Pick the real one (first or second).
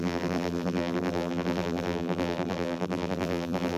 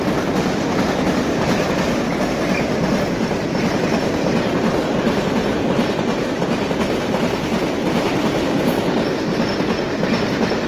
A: second